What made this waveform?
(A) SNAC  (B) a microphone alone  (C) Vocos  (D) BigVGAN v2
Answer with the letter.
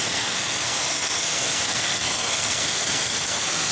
A